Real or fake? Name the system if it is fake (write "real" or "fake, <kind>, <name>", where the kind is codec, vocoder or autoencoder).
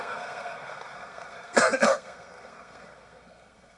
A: fake, codec, SNAC